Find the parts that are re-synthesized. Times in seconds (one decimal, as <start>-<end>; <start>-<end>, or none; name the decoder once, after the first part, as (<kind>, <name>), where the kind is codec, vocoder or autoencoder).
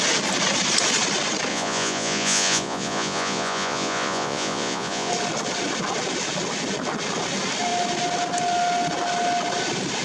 1.5-5.1 (vocoder, Vocos)